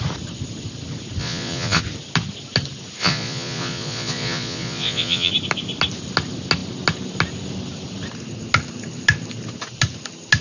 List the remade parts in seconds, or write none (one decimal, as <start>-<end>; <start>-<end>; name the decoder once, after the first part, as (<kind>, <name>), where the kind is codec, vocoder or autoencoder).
1.2-1.8 (vocoder, Vocos); 3.0-5.3